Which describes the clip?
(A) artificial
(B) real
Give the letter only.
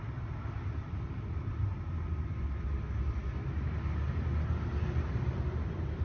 B